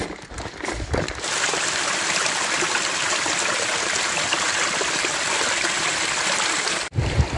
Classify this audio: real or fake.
real